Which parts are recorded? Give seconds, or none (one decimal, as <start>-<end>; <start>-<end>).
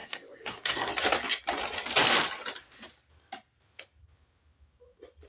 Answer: 0.9-5.3